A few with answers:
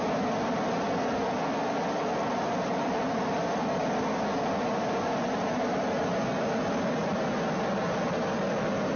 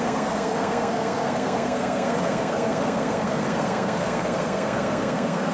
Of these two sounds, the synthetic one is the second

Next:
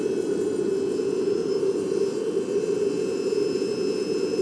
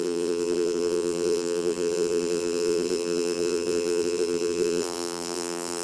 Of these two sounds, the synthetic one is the second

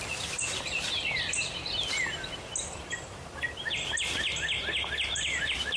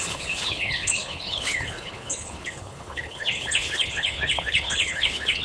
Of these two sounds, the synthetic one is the second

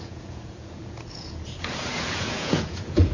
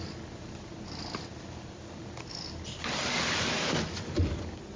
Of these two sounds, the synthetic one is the first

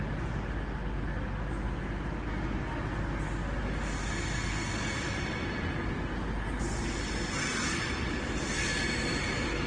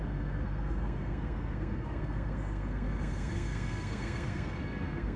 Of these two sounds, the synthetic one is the second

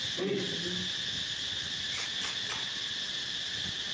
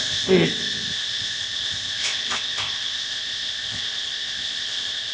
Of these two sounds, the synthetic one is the second